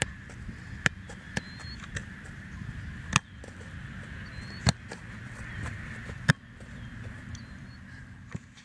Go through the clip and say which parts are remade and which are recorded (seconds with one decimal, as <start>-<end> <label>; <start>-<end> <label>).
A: 0.0-2.0 recorded; 2.0-2.7 remade; 2.7-4.6 recorded; 4.6-6.3 remade; 6.3-8.6 recorded